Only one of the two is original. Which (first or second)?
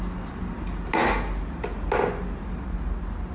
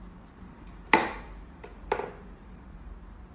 first